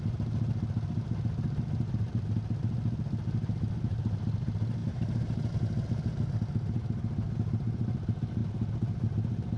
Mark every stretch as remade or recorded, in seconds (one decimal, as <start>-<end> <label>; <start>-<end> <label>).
0.0-4.8 recorded; 4.8-5.5 remade; 5.5-9.6 recorded